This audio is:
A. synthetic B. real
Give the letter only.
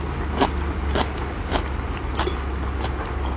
B